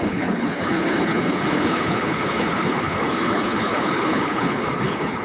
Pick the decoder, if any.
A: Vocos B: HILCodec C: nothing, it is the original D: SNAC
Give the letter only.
B